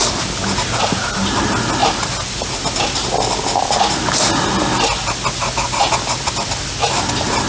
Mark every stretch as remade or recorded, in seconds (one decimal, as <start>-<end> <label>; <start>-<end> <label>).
0.0-7.5 recorded